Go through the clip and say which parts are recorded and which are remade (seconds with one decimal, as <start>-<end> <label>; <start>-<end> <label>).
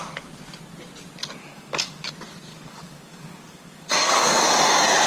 0.0-1.4 recorded; 1.4-2.1 remade; 2.1-2.5 recorded; 2.5-4.4 remade; 4.4-5.1 recorded